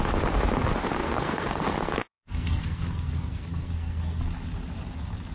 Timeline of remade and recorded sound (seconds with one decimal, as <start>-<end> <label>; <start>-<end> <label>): 0.0-1.0 recorded; 1.0-4.2 remade; 4.2-5.3 recorded